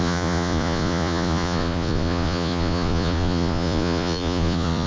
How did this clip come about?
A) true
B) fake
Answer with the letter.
B